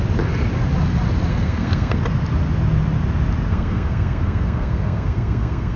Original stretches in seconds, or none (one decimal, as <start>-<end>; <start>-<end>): 0.0-1.3; 2.0-3.5